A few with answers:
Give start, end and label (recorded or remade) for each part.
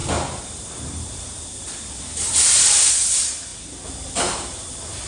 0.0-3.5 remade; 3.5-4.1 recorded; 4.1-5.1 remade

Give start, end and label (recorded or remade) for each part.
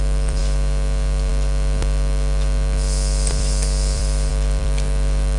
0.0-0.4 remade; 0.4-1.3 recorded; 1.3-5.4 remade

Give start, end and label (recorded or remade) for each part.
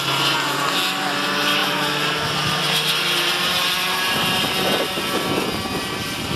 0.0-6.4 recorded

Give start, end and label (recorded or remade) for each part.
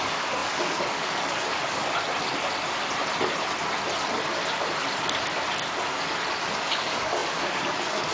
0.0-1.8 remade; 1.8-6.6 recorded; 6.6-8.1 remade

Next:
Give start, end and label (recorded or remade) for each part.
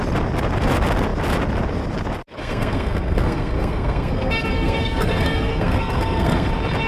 0.0-2.4 recorded; 2.4-6.5 remade; 6.5-6.9 recorded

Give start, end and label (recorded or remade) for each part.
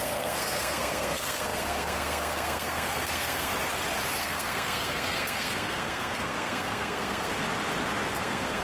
0.0-3.5 remade; 3.5-4.2 recorded; 4.2-7.3 remade; 7.3-8.1 recorded; 8.1-8.6 remade